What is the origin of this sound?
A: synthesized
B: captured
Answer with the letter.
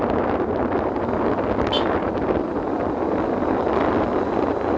B